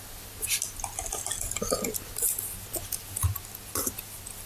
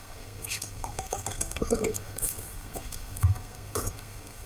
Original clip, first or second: first